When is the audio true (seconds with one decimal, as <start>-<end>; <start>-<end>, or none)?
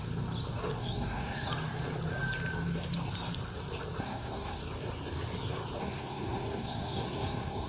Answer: 0.0-0.8; 1.5-4.0; 4.6-5.8